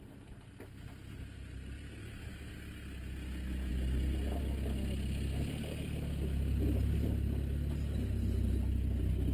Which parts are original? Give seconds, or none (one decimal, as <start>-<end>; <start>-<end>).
0.0-2.0; 2.5-9.3